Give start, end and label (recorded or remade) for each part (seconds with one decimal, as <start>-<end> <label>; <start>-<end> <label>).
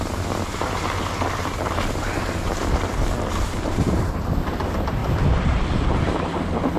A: 0.0-6.8 recorded